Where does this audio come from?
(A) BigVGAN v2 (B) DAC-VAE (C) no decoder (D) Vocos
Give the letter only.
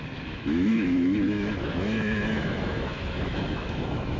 B